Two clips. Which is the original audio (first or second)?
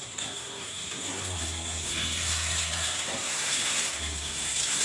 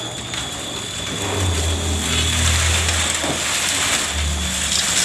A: second